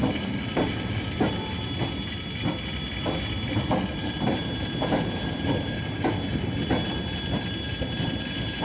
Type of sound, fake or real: real